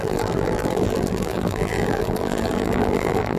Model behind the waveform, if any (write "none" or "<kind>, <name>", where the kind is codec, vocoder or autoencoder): vocoder, BigVGAN v2